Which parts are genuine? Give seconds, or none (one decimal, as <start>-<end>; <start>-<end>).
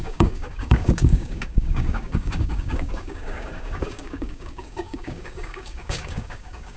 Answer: none